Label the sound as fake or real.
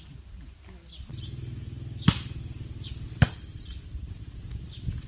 real